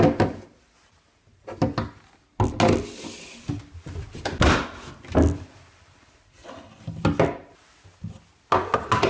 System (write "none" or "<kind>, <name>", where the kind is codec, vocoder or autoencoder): none